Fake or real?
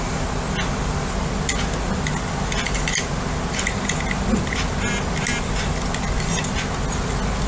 real